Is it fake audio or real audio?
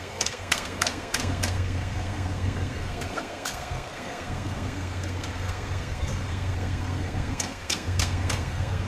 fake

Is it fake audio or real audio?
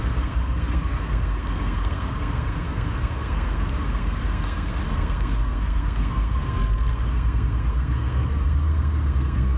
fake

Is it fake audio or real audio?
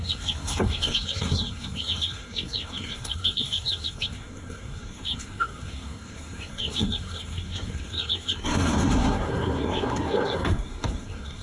fake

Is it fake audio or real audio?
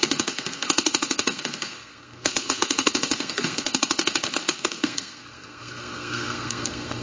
fake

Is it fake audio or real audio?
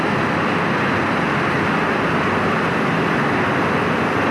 real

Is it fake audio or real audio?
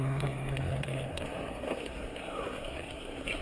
fake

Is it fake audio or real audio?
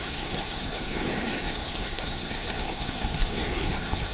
fake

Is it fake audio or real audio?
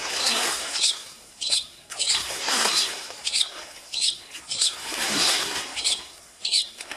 fake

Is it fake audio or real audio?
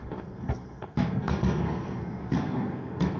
fake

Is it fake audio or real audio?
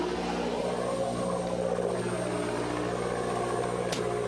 real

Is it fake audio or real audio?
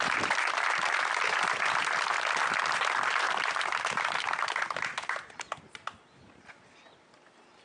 real